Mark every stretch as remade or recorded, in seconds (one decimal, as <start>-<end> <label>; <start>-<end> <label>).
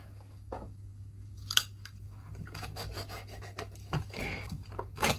0.0-5.2 remade